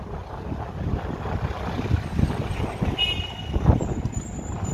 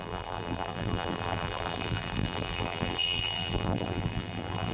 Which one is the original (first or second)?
first